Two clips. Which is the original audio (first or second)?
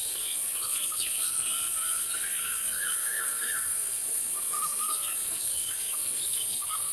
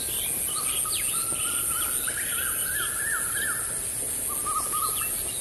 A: second